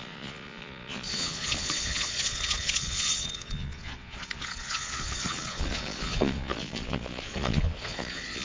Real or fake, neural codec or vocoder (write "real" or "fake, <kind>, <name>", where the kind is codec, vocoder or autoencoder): fake, vocoder, Vocos